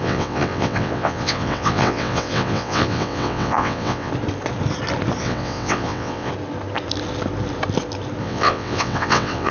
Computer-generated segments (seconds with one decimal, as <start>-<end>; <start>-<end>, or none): 0.0-4.1; 5.2-6.3; 8.2-9.5